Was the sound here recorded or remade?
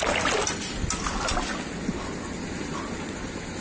recorded